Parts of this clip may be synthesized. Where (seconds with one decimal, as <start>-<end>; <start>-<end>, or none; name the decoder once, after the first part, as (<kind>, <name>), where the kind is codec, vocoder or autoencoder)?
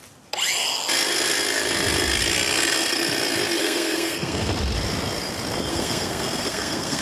3.6-4.5 (codec, SNAC); 5.7-7.0